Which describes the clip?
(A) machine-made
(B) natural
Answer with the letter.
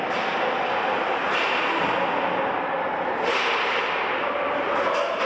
B